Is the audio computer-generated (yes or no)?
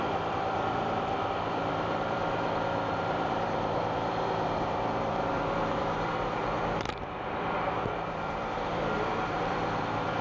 yes